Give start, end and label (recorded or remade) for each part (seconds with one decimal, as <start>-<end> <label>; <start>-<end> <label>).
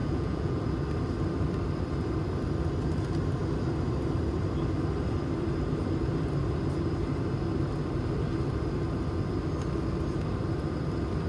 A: 0.0-0.6 remade; 0.6-11.3 recorded